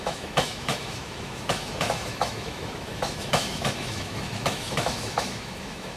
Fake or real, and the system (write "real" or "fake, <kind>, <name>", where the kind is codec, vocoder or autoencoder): fake, autoencoder, DAC-VAE